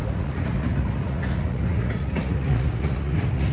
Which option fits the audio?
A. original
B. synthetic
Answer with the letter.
B